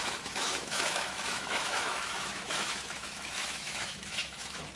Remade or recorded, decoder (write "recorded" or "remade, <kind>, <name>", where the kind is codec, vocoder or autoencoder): remade, autoencoder, DAC-VAE